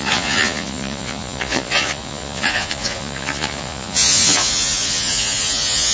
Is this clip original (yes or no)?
no